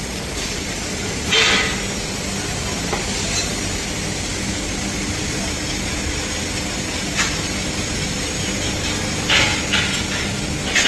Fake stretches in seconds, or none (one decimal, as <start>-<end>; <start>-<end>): none